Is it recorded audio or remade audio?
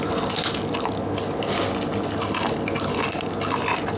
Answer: recorded